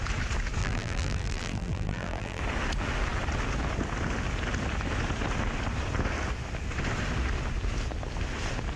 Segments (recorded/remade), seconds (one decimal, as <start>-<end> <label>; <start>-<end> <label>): 0.0-0.6 recorded; 0.6-2.4 remade; 2.4-8.8 recorded